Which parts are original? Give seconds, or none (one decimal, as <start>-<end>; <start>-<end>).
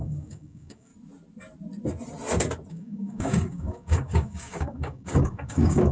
0.9-2.7